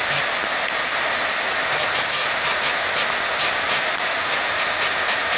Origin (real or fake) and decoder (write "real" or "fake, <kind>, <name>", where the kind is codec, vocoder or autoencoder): real